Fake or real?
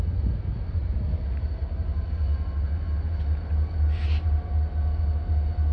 real